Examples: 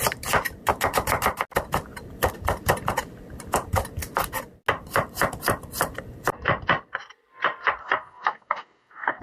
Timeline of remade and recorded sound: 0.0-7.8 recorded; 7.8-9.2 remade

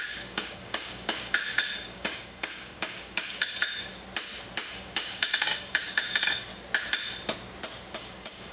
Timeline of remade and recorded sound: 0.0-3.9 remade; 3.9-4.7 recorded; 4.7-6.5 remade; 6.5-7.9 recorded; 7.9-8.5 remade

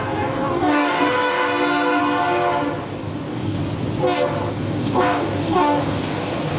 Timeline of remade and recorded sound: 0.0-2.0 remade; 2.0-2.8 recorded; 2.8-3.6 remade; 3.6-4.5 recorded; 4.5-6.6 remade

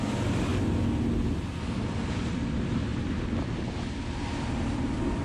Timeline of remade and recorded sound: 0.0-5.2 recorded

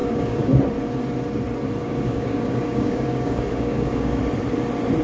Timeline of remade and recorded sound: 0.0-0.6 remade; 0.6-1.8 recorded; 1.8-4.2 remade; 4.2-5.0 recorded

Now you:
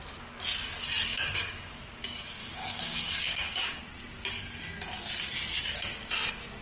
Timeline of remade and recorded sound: 0.0-1.1 recorded; 1.1-1.8 remade; 1.8-2.4 recorded; 2.4-3.8 remade; 3.8-6.6 recorded

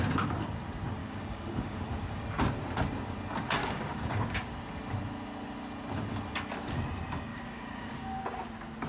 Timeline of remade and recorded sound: 0.0-1.0 recorded; 1.0-2.2 remade; 2.2-3.6 recorded; 3.6-4.5 remade; 4.5-7.3 recorded; 7.3-8.2 remade; 8.2-8.9 recorded

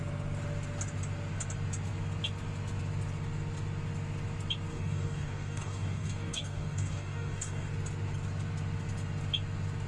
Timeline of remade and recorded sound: 0.0-4.7 recorded; 4.7-7.7 remade; 7.7-9.9 recorded